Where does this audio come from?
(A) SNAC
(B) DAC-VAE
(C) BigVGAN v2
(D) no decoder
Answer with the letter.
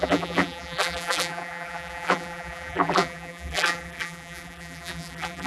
C